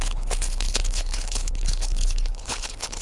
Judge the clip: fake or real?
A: fake